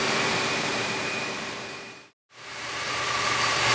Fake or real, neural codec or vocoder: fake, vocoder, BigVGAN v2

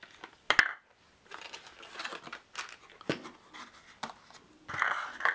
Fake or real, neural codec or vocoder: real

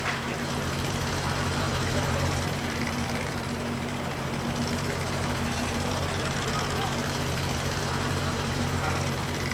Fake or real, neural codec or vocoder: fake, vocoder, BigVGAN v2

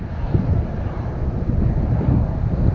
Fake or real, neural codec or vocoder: real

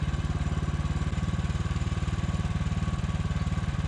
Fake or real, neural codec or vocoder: real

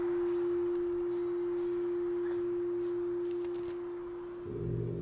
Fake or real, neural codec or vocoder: real